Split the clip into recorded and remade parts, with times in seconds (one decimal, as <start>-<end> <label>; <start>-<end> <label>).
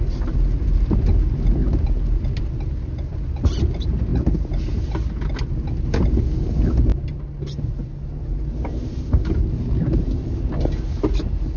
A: 0.0-11.6 recorded